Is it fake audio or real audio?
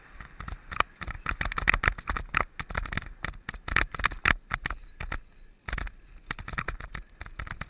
real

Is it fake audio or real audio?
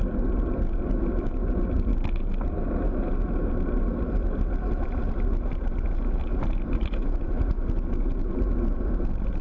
real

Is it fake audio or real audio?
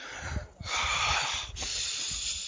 real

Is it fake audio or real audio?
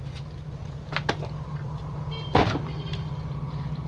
real